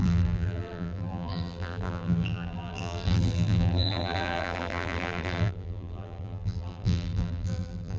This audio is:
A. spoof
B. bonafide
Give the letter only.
A